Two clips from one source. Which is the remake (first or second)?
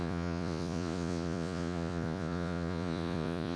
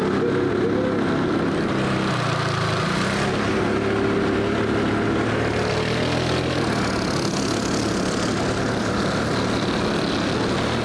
first